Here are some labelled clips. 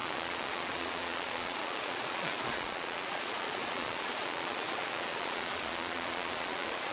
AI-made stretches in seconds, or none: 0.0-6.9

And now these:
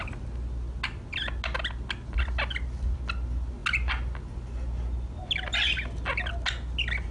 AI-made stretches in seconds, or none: none

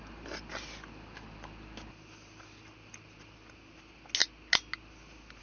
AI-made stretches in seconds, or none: none

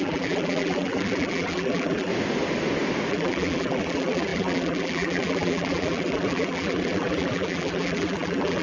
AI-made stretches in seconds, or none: 0.0-2.1; 3.1-8.6